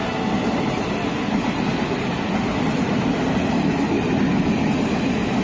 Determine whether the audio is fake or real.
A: real